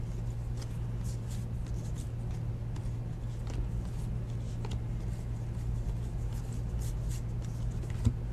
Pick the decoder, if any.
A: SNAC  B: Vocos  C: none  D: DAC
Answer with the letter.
C